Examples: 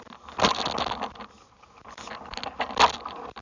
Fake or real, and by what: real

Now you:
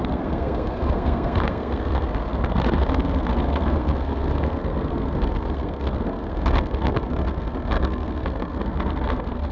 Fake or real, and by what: fake, codec, SNAC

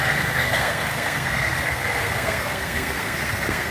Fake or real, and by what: fake, codec, SNAC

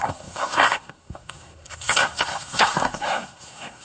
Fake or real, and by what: fake, codec, SNAC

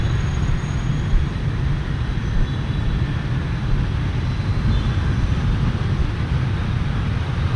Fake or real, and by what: real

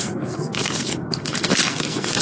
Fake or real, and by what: fake, codec, SNAC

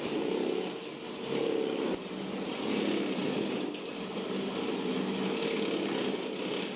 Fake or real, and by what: real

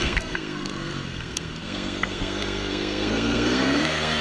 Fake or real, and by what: fake, codec, SNAC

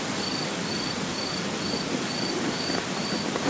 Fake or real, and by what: real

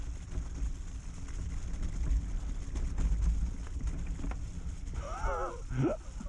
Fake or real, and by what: real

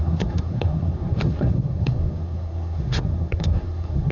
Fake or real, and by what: fake, codec, SNAC